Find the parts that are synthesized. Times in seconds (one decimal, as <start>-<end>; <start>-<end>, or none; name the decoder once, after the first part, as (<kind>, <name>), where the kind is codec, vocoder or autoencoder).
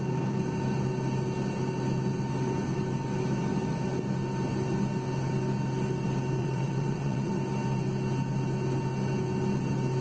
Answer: 6.4-7.4 (vocoder, WaveNeXt)